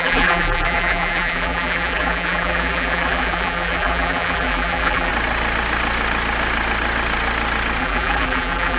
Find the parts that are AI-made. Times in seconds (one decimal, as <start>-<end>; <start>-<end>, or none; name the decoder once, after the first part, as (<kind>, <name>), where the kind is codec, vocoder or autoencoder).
0.0-5.1 (vocoder, BigVGAN v2); 7.8-8.8